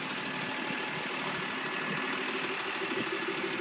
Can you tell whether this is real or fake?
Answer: real